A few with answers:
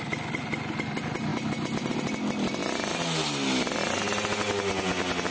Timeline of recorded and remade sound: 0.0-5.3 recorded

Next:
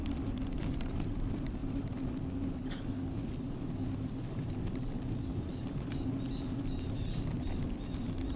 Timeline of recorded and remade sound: 0.0-1.6 recorded; 1.6-2.2 remade; 2.2-8.4 recorded

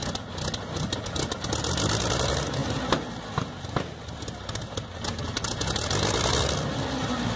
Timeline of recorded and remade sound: 0.0-1.6 recorded; 1.6-2.6 remade; 2.6-6.4 recorded; 6.4-7.4 remade

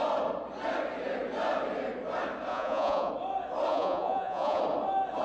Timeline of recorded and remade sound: 0.0-2.5 recorded; 2.5-3.1 remade; 3.1-3.7 recorded; 3.7-4.6 remade; 4.6-5.2 recorded

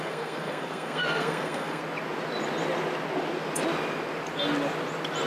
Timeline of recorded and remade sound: 0.0-1.8 remade; 1.8-5.3 recorded

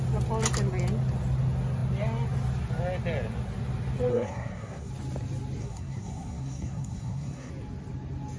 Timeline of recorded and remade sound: 0.0-4.1 recorded; 4.1-4.9 remade; 4.9-5.6 recorded; 5.6-7.5 remade; 7.5-8.4 recorded

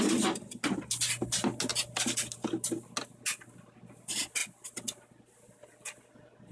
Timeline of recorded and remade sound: 0.0-6.5 recorded